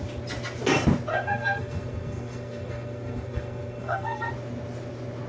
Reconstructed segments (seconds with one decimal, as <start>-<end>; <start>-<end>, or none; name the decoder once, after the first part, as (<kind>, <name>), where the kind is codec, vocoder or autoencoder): 1.1-4.3 (codec, SNAC)